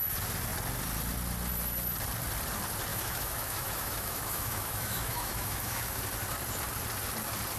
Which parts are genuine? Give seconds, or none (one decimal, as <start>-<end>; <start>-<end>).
0.0-2.9; 6.0-7.6